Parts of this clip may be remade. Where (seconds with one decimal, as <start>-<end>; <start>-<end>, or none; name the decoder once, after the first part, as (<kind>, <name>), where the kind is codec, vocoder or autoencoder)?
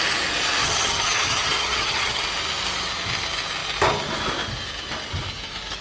0.6-2.2 (vocoder, HiFi-GAN)